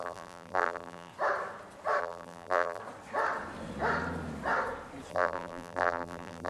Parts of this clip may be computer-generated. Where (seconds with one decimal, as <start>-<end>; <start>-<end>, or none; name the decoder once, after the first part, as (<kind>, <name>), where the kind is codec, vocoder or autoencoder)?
0.0-1.1 (vocoder, BigVGAN v2); 2.0-2.8; 5.1-6.5

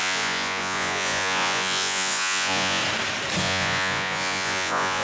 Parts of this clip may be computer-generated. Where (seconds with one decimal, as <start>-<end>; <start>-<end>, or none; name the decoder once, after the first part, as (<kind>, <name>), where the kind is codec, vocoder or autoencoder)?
0.0-2.8 (vocoder, Vocos); 3.4-5.0

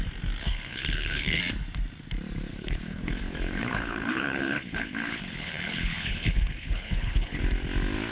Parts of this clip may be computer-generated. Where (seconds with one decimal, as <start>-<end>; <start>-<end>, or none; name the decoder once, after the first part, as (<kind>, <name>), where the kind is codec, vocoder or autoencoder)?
0.4-1.4 (codec, HILCodec); 2.5-7.4

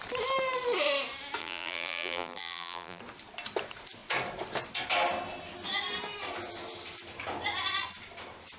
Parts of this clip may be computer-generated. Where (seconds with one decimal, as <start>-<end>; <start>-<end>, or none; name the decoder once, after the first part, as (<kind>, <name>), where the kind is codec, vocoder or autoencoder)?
1.4-3.0 (vocoder, BigVGAN v2)

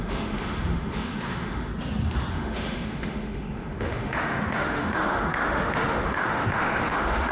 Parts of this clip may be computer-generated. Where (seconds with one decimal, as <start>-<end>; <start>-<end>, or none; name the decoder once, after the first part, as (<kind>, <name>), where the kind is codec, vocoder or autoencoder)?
0.0-1.7 (autoencoder, DAC-VAE); 2.3-7.3

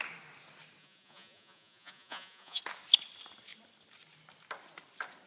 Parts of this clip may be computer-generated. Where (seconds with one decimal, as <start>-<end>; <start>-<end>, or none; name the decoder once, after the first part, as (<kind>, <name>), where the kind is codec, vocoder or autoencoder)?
0.8-2.6 (vocoder, Vocos)

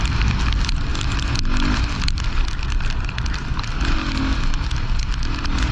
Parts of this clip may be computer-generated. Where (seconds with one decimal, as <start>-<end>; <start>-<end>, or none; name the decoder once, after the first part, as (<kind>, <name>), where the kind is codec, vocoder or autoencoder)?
none